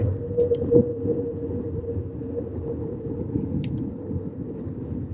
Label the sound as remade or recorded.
recorded